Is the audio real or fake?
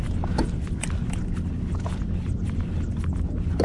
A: real